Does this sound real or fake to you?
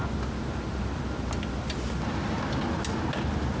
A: real